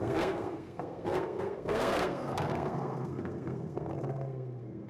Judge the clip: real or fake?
fake